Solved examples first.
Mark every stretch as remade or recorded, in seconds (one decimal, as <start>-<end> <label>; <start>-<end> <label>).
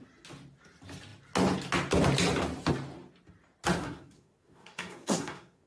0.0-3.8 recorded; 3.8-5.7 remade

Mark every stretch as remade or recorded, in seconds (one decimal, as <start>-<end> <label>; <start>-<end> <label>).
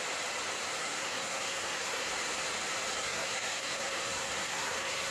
0.0-0.8 recorded; 0.8-2.1 remade; 2.1-2.9 recorded; 2.9-5.1 remade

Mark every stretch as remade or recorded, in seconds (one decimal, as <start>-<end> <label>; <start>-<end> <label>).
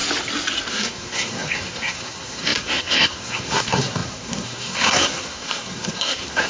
0.0-0.7 recorded; 0.7-6.5 remade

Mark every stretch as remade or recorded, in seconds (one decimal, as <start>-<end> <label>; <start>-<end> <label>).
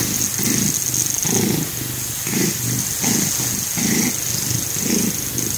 0.0-5.6 recorded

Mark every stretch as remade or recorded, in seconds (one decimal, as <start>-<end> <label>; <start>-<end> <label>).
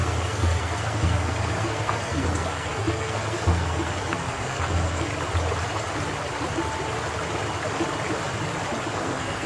0.0-5.1 remade; 5.1-8.9 recorded; 8.9-9.5 remade